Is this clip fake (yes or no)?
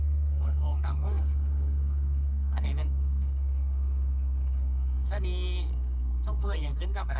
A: yes